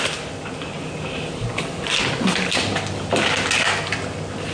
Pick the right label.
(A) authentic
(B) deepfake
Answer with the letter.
A